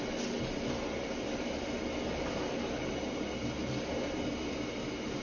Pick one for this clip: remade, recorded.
recorded